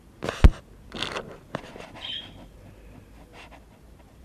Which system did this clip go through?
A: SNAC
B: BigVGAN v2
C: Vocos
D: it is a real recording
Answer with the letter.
D